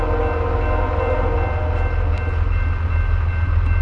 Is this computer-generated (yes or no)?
no